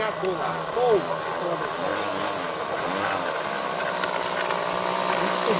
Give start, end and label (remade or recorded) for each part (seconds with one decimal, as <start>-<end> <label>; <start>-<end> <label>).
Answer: 0.0-5.6 recorded